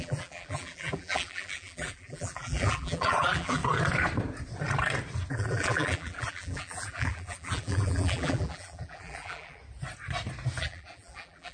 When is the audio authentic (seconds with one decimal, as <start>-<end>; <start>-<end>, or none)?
3.6-5.3; 9.6-10.6